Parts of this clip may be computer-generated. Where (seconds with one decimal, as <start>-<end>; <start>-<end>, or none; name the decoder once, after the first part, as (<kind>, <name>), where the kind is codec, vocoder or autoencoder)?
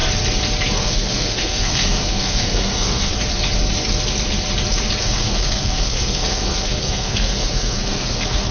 0.8-3.1 (codec, SNAC); 5.0-8.5